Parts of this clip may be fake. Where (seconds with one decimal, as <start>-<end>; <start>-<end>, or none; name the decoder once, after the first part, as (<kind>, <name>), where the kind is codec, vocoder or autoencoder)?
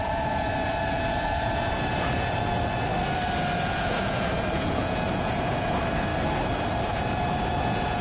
0.0-2.9 (vocoder, Vocos); 3.5-6.1; 7.3-8.0